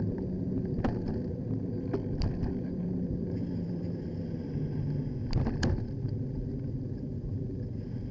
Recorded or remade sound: recorded